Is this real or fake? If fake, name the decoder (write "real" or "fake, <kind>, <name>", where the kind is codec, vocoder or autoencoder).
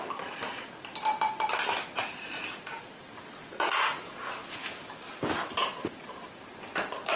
real